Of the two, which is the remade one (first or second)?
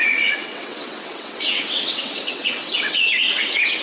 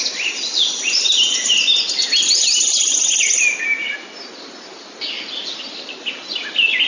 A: first